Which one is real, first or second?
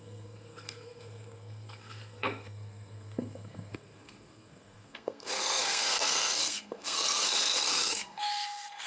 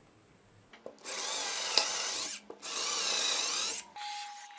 second